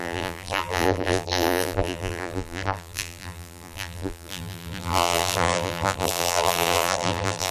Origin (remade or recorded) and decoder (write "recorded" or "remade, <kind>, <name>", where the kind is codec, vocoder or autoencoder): remade, vocoder, BigVGAN v2